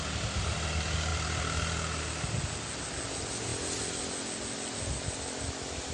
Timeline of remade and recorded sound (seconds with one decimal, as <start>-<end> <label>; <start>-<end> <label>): 0.0-5.9 recorded